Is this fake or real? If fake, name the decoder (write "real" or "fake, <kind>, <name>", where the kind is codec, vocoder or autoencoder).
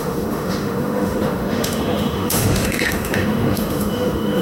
fake, autoencoder, DAC-VAE